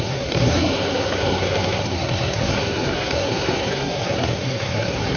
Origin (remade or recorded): remade